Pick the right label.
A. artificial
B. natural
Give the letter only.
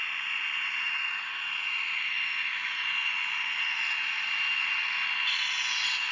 B